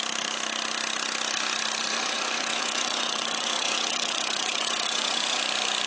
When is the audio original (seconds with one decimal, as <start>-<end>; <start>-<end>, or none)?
0.0-1.9; 5.4-5.9